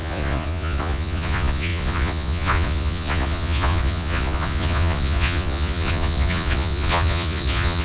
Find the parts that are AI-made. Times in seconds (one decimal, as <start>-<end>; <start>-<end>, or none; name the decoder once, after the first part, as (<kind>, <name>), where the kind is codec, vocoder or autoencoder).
0.0-7.8 (vocoder, Vocos)